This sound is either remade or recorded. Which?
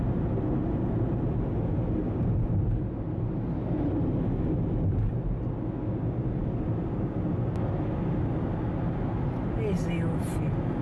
recorded